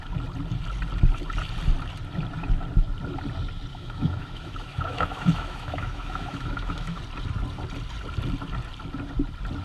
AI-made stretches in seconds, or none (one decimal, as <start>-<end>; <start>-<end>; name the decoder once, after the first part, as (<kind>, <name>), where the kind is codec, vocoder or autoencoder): 3.7-7.0 (autoencoder, DAC-VAE)

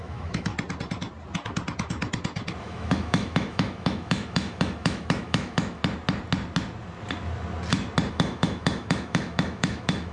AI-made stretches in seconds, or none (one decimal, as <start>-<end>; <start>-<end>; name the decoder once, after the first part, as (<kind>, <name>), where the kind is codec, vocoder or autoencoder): 0.0-0.5 (autoencoder, DAC-VAE); 2.6-5.8; 8.1-10.1

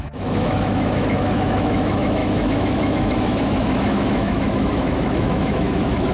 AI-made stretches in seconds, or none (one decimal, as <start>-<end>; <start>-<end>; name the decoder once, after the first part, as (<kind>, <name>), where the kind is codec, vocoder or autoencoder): 0.0-6.1 (autoencoder, DAC-VAE)

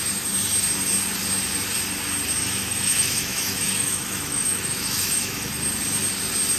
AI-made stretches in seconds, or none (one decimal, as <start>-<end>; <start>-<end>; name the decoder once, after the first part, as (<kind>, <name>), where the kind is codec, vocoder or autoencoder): 2.4-5.5 (autoencoder, DAC-VAE)

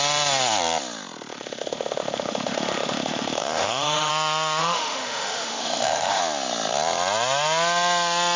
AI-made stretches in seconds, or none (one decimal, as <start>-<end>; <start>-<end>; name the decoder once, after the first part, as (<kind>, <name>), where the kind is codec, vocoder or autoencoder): 1.3-4.1 (autoencoder, DAC-VAE); 4.6-6.2

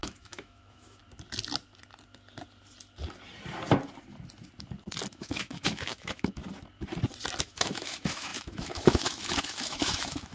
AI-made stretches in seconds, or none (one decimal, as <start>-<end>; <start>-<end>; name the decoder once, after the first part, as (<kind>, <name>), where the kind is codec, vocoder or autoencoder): 0.0-1.0 (autoencoder, DAC-VAE); 5.1-6.4; 7.4-10.3